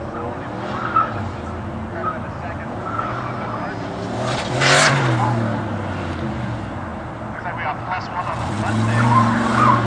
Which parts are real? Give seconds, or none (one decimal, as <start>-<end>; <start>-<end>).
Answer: 0.0-9.9